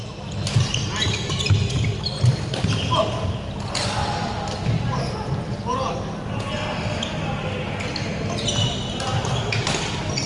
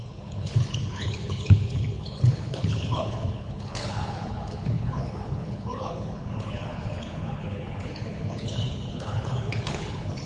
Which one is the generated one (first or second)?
second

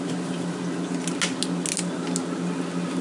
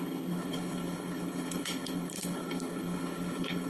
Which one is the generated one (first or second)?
second